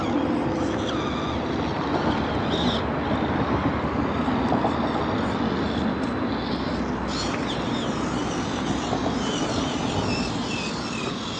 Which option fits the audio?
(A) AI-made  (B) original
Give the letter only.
B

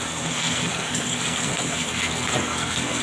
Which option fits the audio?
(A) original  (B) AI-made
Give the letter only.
B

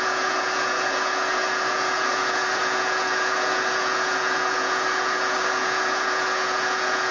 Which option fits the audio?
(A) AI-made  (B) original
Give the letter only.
A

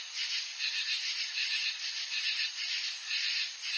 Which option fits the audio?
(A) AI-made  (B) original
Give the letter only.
B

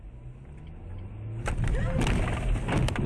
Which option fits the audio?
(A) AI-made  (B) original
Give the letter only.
B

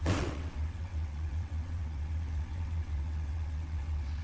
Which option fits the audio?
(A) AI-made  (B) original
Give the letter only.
A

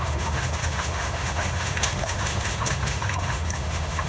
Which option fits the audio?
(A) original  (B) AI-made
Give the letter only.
B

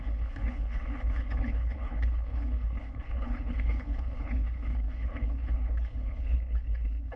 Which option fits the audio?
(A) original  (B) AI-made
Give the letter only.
B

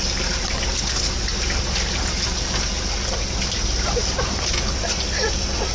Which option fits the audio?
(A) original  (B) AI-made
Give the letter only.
A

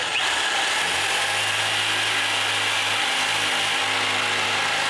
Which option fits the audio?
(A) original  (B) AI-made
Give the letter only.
A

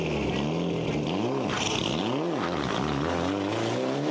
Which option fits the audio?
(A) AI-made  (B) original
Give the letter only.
B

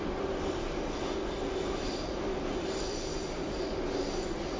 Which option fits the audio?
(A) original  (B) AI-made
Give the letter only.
A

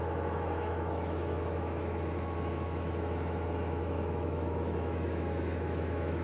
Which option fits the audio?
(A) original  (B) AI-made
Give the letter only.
B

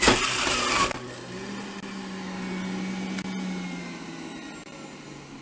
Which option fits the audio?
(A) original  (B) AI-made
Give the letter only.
A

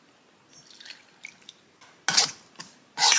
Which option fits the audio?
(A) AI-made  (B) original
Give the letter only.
B